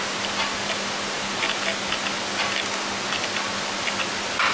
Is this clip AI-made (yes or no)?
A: no